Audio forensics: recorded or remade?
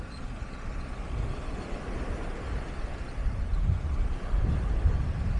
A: recorded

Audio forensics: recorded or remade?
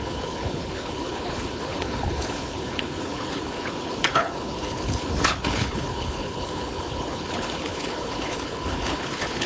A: remade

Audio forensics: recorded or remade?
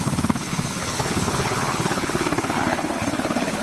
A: remade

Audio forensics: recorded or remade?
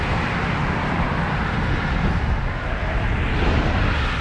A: recorded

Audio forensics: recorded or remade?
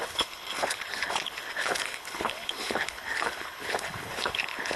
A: remade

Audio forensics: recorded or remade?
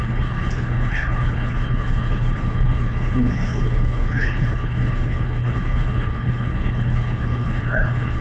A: remade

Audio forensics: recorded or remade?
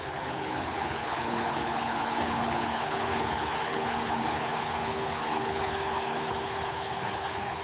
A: remade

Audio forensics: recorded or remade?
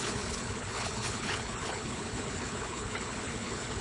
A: remade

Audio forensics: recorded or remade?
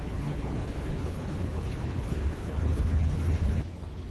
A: remade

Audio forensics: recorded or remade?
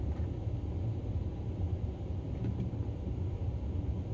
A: recorded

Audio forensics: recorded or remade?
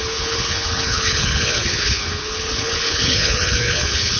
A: remade